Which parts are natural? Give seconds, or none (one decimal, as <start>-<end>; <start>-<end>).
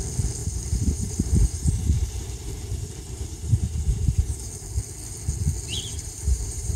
0.0-0.4; 4.5-5.9